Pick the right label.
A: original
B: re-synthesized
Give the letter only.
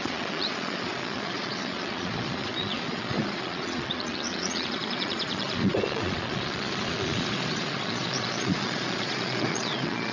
B